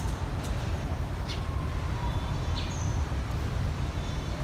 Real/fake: fake